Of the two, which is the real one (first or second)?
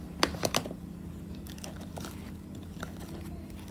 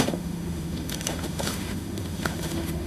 first